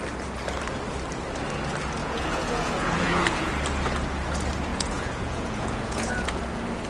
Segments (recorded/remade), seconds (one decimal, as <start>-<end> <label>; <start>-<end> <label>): 0.0-2.0 recorded; 2.0-3.5 remade; 3.5-4.7 recorded; 4.7-6.4 remade; 6.4-6.9 recorded